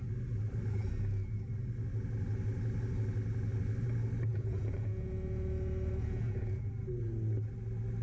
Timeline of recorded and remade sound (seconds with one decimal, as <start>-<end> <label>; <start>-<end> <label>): 0.0-4.3 recorded; 4.3-6.7 remade; 6.7-8.0 recorded